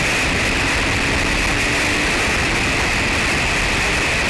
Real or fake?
real